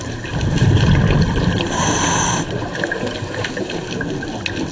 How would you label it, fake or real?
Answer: real